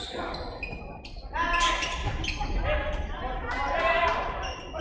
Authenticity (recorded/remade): recorded